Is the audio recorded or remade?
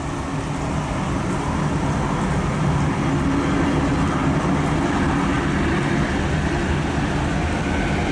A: recorded